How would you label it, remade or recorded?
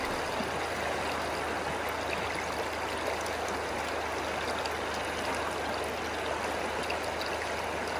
recorded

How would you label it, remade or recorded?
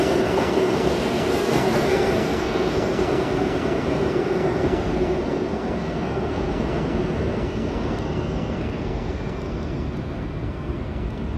remade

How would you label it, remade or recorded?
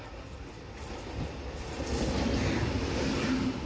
recorded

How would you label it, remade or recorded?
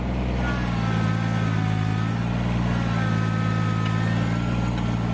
recorded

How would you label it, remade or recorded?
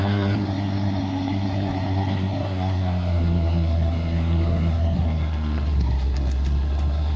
remade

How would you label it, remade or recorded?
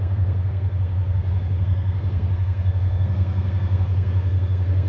remade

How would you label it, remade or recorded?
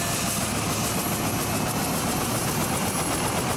recorded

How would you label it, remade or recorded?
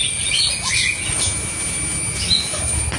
recorded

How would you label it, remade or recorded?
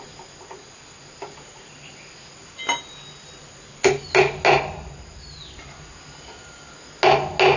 recorded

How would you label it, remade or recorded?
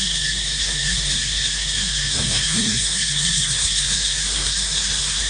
remade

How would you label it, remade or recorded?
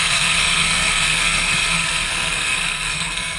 remade